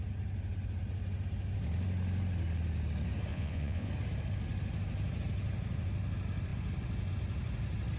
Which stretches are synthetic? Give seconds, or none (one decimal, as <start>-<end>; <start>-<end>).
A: 3.3-3.9

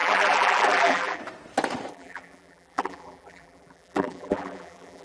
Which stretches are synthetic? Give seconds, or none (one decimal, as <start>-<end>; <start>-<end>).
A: 0.0-1.2; 1.9-5.0

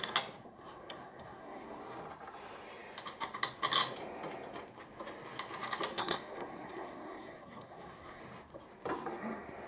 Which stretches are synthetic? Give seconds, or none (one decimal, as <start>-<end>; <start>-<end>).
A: 0.4-1.8; 5.9-8.2

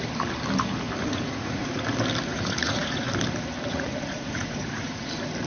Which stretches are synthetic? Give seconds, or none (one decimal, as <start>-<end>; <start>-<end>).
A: 1.0-1.8; 2.3-3.1; 3.7-5.1

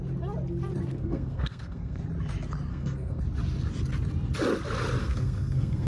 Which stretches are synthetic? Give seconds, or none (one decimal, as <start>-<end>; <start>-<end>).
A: 0.9-2.0; 2.7-3.2; 5.0-5.9